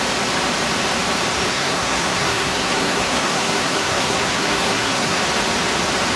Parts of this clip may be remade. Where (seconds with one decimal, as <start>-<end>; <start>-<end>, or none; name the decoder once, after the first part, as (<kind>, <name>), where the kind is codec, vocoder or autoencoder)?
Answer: 1.5-5.2 (codec, SNAC)